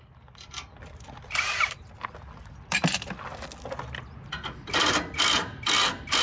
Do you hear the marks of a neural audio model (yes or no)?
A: no